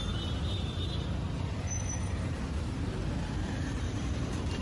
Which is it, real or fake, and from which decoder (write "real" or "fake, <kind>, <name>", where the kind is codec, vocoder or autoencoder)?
fake, vocoder, BigVGAN v2